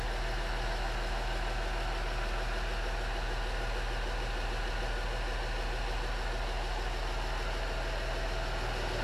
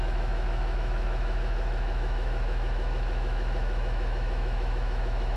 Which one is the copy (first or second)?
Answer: second